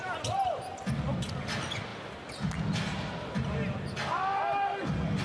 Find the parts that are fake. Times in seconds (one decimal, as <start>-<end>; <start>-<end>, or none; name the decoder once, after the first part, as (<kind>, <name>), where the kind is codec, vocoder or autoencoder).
none